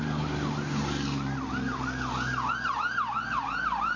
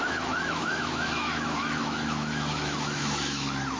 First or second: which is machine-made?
second